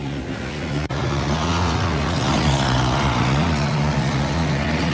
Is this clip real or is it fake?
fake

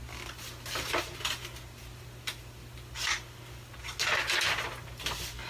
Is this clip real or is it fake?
real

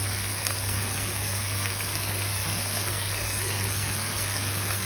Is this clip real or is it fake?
fake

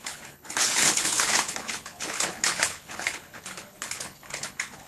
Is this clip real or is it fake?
fake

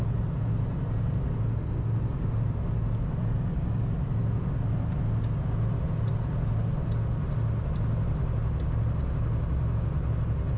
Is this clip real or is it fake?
real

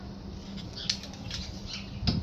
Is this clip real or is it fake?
real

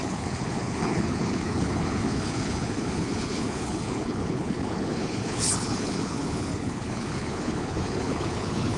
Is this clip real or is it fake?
fake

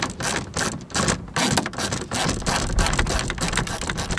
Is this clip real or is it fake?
real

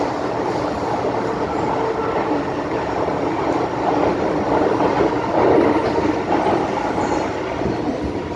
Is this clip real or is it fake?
real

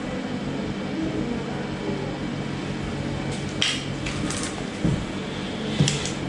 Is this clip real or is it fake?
real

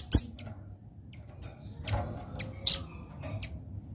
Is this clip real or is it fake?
real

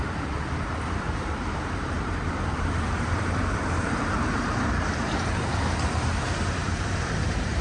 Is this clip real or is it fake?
fake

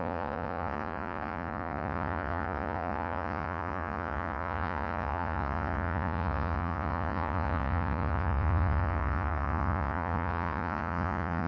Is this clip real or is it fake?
fake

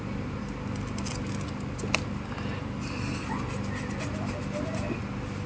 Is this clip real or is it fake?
real